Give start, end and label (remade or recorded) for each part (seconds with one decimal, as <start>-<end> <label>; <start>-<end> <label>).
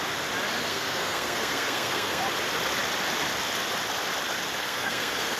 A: 0.0-0.7 recorded; 0.7-2.3 remade; 2.3-4.6 recorded; 4.6-5.4 remade